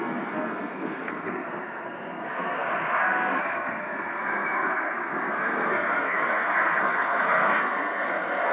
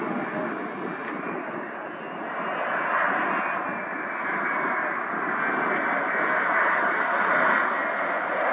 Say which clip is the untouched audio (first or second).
second